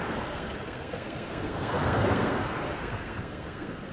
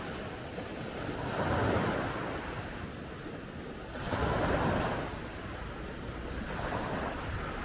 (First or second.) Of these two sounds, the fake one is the first